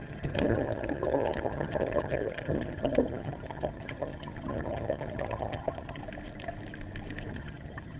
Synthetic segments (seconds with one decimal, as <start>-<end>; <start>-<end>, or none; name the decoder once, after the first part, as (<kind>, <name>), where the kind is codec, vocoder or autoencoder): 0.0-6.0 (vocoder, HiFi-GAN); 7.3-8.0